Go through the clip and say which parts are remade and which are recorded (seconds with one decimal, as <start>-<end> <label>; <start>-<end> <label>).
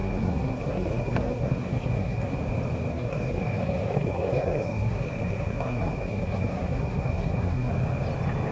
0.0-2.4 remade; 2.4-2.9 recorded; 2.9-7.7 remade; 7.7-8.5 recorded